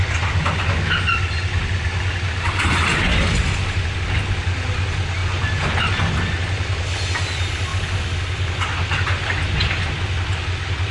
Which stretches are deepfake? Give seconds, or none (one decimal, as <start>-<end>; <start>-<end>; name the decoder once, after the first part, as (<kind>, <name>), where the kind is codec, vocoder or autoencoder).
none

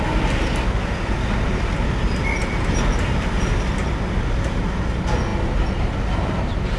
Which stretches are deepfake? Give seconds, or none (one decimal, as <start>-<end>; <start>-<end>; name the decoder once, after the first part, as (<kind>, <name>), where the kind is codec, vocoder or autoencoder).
none